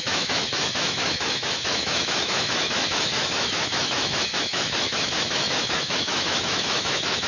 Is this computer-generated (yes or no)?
yes